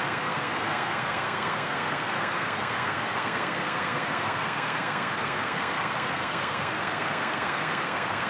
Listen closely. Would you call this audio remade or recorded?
remade